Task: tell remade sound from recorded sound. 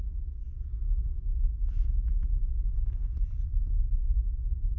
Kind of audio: recorded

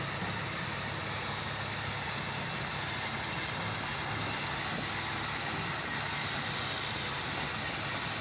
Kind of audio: recorded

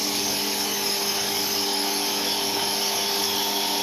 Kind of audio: remade